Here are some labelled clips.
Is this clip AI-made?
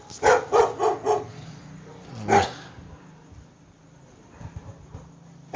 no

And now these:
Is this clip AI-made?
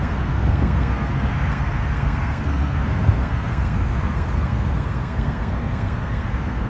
yes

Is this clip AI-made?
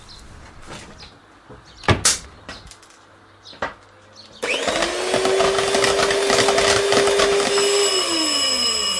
no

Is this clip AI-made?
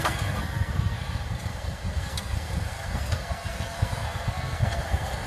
yes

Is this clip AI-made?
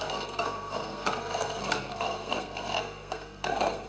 yes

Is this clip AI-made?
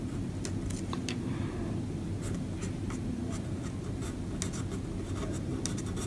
no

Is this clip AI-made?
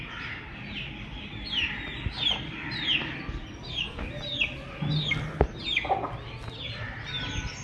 no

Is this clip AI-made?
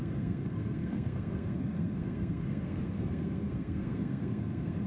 yes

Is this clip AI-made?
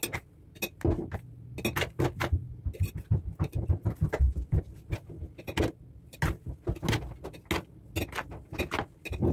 no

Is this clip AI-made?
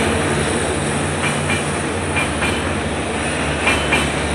no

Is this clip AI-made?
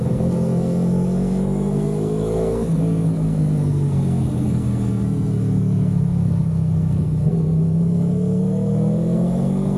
yes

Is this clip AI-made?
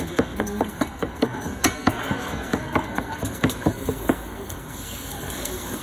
yes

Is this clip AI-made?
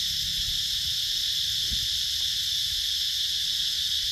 no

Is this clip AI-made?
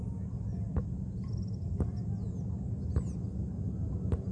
no